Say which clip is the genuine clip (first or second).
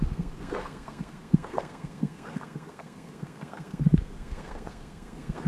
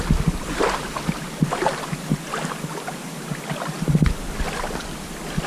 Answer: second